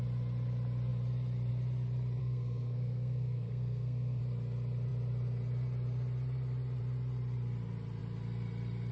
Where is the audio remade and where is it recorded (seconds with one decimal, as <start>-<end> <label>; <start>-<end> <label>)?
0.0-2.2 recorded; 2.2-4.2 remade; 4.2-8.9 recorded

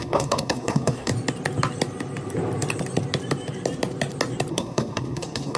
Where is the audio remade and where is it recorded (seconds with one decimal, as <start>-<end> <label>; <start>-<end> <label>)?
0.0-1.1 remade; 1.1-4.5 recorded; 4.5-5.6 remade

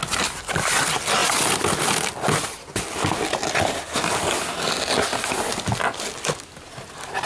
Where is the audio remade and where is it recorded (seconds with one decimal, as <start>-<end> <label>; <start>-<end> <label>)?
0.0-7.3 recorded

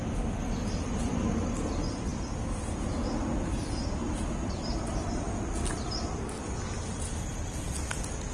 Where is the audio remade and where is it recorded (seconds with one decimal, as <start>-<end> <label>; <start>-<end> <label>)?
0.0-8.3 recorded

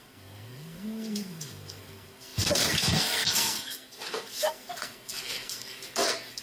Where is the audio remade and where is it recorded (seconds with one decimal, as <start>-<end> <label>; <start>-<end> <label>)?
0.0-6.4 remade

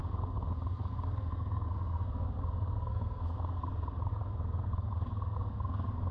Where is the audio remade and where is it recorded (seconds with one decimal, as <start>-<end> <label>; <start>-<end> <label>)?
0.0-6.1 remade

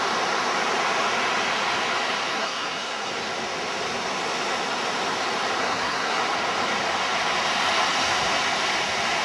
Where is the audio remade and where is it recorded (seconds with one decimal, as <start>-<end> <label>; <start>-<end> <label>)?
0.0-2.3 recorded; 2.3-3.1 remade; 3.1-5.6 recorded; 5.6-6.2 remade; 6.2-9.2 recorded